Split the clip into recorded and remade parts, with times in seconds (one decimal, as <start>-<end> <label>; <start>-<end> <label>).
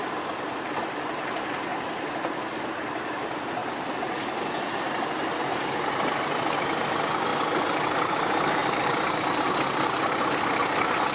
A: 0.0-11.1 recorded